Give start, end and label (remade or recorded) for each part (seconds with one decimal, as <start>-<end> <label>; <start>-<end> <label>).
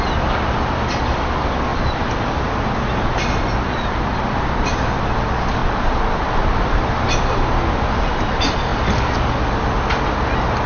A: 0.0-1.7 recorded; 1.7-4.8 remade; 4.8-5.6 recorded; 5.6-6.3 remade; 6.3-10.7 recorded